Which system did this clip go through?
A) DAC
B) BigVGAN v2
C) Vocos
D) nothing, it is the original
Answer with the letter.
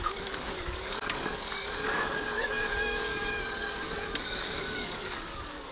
A